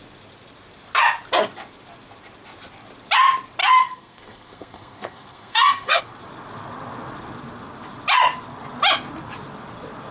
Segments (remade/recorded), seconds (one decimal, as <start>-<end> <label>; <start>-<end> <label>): 0.0-3.6 recorded; 3.6-6.0 remade; 6.0-10.1 recorded